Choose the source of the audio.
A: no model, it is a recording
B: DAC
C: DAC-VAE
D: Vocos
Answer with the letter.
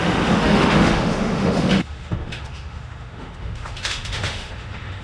C